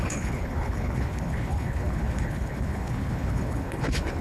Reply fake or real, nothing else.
fake